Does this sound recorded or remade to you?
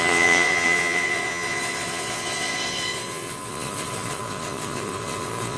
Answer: remade